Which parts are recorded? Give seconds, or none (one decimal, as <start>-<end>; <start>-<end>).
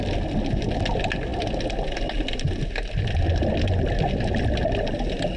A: 0.0-5.4